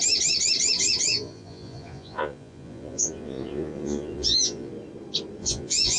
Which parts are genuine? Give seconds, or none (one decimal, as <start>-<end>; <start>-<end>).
0.0-1.1; 4.7-5.4

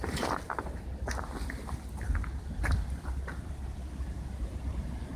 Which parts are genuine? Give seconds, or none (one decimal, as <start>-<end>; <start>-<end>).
0.0-5.2

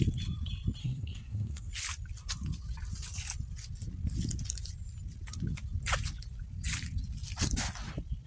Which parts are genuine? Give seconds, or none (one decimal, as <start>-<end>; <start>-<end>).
0.0-0.8; 1.7-8.3

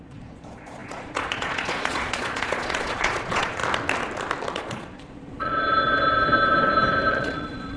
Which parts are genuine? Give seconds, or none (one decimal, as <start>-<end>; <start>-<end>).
3.6-4.5; 5.5-7.1

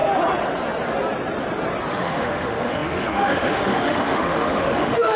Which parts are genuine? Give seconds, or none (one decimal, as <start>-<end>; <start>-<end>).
0.0-1.9